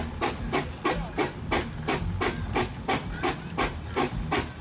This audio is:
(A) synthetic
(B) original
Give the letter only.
B